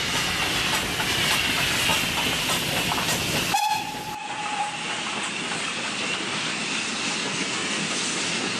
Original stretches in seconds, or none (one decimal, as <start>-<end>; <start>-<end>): 0.0-7.2; 7.8-8.6